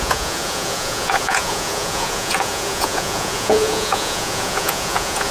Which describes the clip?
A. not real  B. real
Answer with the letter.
A